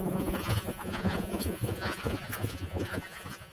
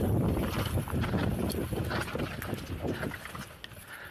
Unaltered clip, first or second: second